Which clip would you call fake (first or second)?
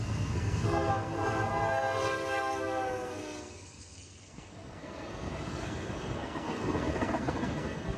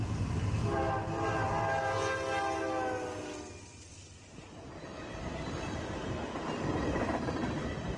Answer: first